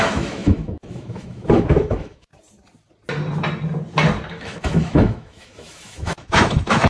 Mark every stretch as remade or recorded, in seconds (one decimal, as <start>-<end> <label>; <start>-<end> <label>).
0.0-2.3 remade; 2.3-4.3 recorded; 4.3-6.9 remade